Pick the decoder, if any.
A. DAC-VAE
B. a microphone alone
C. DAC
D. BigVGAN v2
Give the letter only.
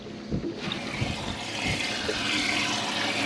B